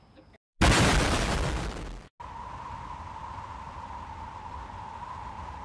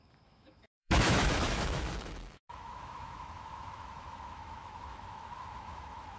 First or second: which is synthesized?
second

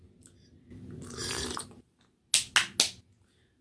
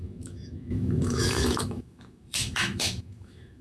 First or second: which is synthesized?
second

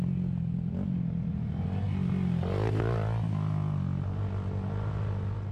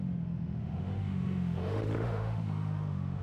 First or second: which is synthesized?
second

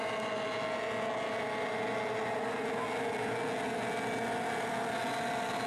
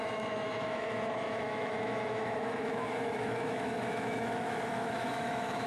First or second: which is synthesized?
second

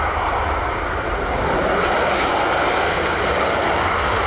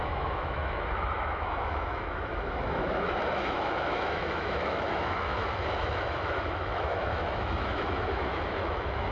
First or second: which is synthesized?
second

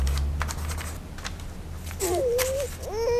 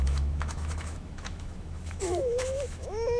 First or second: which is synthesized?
second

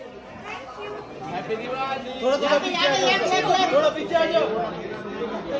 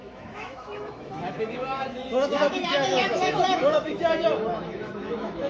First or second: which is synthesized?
second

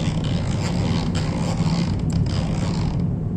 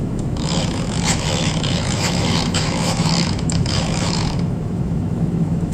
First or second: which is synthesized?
second